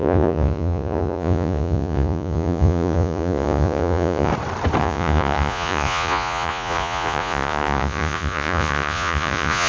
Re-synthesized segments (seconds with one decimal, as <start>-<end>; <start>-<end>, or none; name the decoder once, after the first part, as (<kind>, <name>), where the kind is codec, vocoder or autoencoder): 0.0-4.3 (vocoder, Vocos); 4.8-9.7